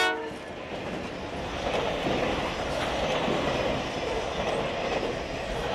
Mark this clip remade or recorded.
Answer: recorded